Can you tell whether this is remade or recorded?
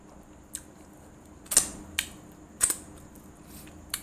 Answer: recorded